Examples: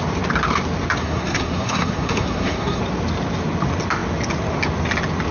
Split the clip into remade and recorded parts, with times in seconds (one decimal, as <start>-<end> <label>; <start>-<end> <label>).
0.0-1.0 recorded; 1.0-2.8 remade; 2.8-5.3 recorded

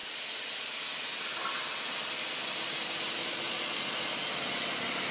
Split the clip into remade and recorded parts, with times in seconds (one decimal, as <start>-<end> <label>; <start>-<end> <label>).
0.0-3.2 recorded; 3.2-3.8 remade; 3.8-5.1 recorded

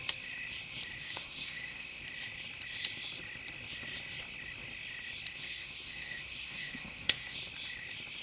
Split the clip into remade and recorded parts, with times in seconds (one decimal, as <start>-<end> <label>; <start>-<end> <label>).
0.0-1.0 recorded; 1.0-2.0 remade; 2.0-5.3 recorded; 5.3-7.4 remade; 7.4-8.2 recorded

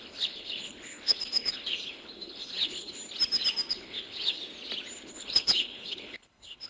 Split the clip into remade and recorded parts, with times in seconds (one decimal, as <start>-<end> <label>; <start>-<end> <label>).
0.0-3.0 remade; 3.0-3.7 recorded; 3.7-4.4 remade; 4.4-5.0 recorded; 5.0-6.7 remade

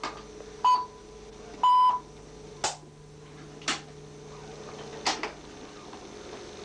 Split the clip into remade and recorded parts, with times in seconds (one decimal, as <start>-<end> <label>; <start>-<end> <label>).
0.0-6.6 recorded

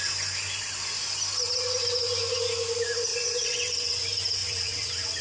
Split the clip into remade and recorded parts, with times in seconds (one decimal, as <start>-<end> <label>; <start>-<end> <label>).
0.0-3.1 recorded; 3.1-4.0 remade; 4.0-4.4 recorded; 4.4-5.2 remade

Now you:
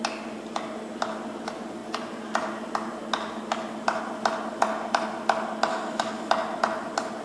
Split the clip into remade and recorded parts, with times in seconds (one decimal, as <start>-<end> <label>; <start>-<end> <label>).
0.0-5.7 recorded; 5.7-6.3 remade; 6.3-7.2 recorded

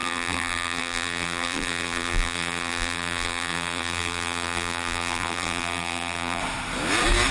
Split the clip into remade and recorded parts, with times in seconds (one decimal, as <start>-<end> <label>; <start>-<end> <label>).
0.0-6.4 remade; 6.4-7.3 recorded